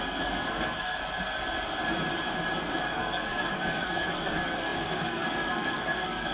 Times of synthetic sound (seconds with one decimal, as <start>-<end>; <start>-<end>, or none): 0.0-1.0; 2.8-6.3